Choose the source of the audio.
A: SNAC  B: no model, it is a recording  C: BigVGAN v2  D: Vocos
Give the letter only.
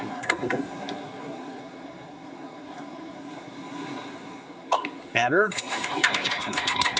A